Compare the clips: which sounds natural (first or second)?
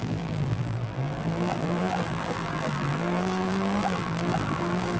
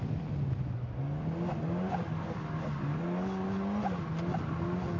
second